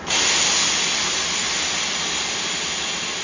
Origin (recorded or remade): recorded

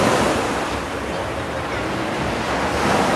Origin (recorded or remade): recorded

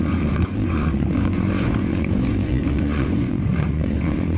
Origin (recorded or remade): remade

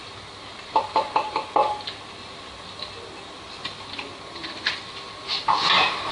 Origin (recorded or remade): recorded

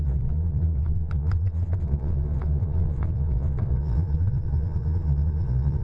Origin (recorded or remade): remade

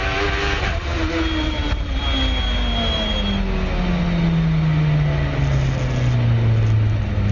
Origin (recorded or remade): recorded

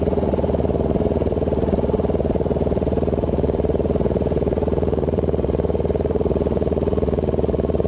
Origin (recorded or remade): remade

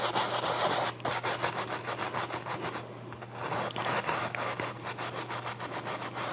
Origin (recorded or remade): recorded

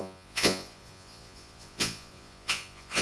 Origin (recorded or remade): remade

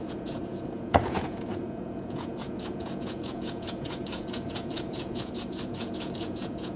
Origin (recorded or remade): remade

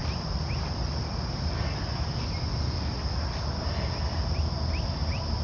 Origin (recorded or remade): recorded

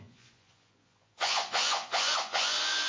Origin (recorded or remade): remade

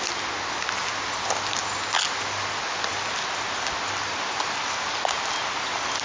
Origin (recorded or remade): recorded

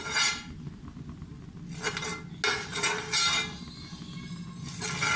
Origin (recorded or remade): recorded